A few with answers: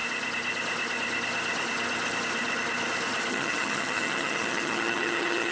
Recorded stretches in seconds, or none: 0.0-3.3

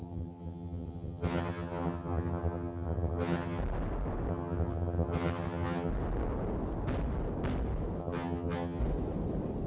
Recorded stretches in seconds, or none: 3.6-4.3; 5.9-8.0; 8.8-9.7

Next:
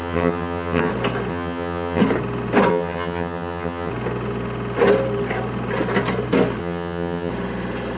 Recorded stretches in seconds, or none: 0.9-1.3; 2.0-2.7; 3.9-6.6; 7.3-8.0

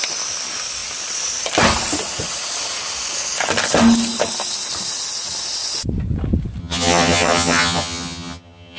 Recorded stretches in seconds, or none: 0.0-6.6

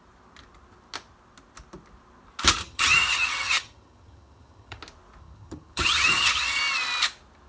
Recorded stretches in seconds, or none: 0.0-2.6; 4.8-5.2; 6.6-7.5